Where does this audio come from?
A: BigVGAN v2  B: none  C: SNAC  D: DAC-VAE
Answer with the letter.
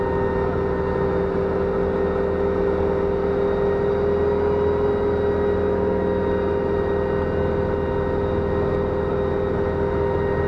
B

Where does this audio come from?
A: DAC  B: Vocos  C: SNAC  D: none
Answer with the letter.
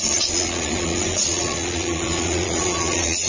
B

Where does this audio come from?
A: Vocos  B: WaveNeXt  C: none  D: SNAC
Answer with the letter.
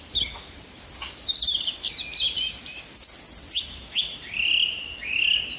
C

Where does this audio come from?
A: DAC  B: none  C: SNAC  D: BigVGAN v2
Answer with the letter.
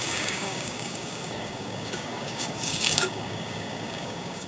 A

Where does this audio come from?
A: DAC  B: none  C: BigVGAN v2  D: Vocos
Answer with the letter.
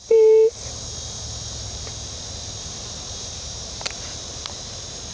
C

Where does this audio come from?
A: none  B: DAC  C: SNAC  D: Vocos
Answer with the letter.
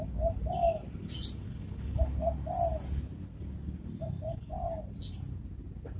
A